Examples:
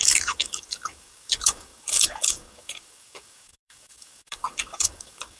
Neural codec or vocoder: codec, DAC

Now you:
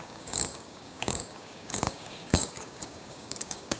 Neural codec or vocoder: codec, DAC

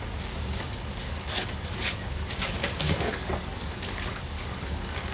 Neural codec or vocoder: codec, DAC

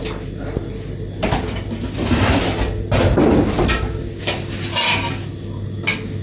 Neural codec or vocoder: none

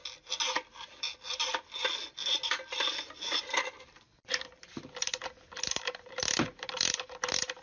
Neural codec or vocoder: none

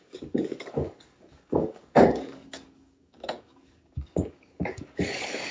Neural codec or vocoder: codec, DAC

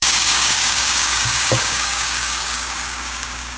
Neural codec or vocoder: codec, DAC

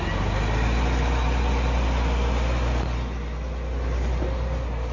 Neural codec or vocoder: none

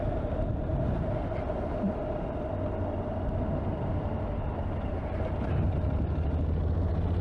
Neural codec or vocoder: none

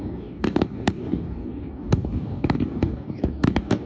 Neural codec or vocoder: codec, DAC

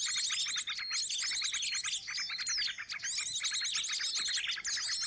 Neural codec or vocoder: none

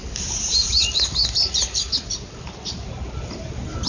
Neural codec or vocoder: none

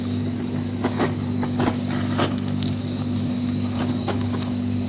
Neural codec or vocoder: codec, DAC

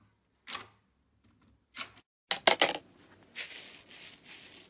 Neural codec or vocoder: none